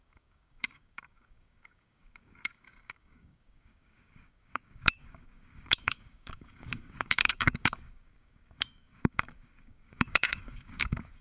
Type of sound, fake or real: fake